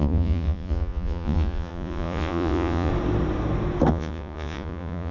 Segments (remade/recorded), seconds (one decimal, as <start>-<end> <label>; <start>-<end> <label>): 0.0-2.9 remade; 2.9-3.9 recorded; 3.9-5.1 remade